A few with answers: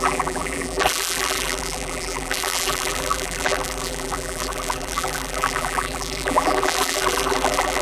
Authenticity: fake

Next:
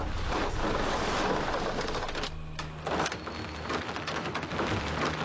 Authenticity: real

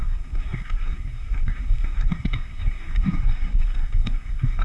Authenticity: fake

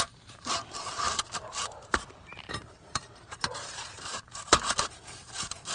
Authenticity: fake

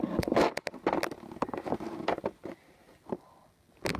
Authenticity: real